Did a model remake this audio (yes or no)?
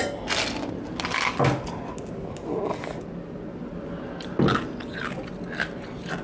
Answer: no